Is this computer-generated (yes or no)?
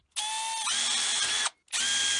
no